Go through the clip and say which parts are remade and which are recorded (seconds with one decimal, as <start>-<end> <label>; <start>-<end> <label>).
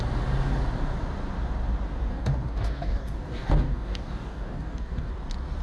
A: 0.0-2.1 recorded; 2.1-5.1 remade; 5.1-5.6 recorded